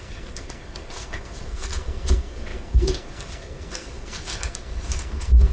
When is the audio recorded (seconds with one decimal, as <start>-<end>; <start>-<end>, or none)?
none